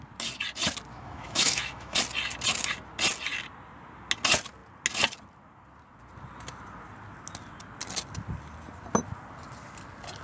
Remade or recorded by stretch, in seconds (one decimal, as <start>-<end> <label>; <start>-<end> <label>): 0.0-0.9 recorded; 0.9-2.0 remade; 2.0-10.2 recorded